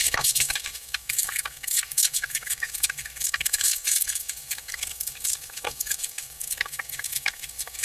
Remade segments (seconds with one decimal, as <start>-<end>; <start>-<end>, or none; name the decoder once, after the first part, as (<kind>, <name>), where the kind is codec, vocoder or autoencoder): 0.0-7.8 (codec, SNAC)